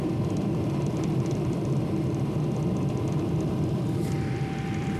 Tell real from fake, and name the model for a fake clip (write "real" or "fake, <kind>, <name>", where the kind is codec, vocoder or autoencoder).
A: fake, vocoder, BigVGAN v2